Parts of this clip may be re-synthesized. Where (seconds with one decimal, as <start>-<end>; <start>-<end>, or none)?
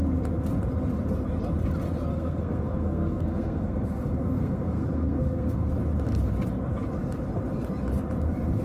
2.1-5.7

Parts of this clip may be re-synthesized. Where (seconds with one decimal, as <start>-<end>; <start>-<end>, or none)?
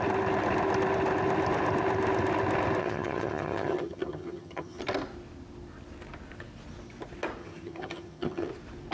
2.8-4.8; 7.4-8.5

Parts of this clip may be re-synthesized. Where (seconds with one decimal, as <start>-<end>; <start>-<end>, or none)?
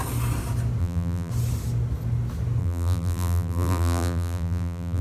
0.8-1.3; 2.6-5.0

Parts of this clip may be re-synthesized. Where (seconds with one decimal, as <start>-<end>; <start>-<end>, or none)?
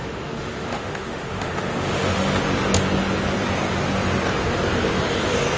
0.0-2.4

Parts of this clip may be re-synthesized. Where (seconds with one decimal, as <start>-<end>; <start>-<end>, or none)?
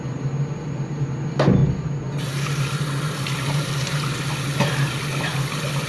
none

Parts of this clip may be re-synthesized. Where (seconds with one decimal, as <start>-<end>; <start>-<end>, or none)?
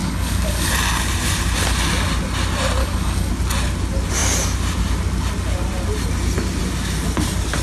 0.0-0.7; 2.8-3.3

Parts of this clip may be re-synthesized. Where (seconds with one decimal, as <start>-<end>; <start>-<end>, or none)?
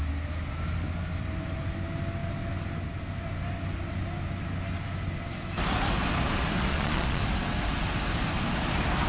6.7-7.2